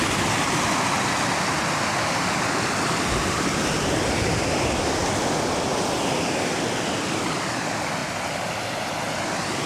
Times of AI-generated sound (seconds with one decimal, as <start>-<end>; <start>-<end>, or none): none